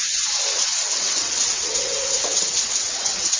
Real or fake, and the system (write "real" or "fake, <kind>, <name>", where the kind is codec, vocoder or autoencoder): fake, vocoder, WaveNeXt